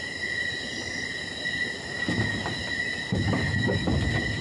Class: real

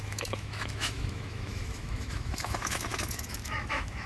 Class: fake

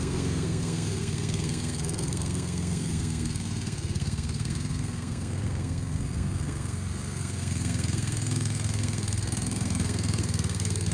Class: fake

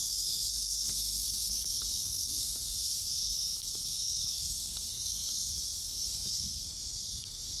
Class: fake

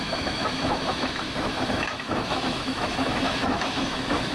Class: fake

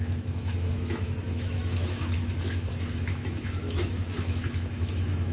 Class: fake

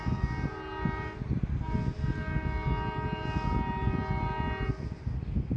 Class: real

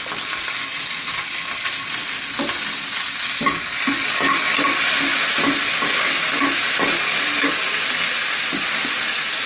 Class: real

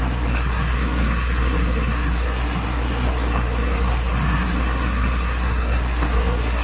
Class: fake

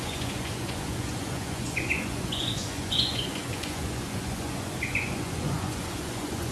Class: fake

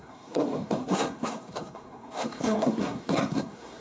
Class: fake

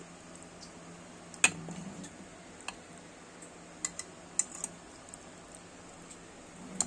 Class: real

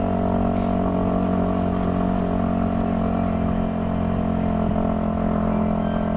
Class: real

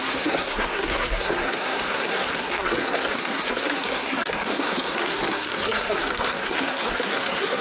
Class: fake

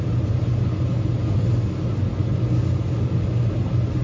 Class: real